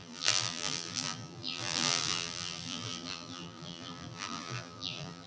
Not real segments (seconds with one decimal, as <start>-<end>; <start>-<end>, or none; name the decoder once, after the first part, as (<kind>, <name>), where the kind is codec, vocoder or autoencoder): 0.0-5.3 (vocoder, BigVGAN v2)